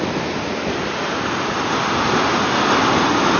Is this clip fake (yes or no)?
no